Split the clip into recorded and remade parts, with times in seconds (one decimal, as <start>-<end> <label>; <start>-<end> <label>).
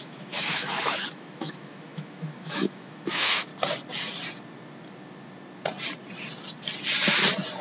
0.0-3.5 remade; 3.5-7.6 recorded